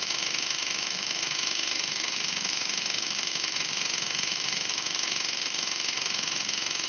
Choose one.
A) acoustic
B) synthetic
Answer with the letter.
B